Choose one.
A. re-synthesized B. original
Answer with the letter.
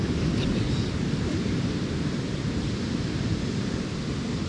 B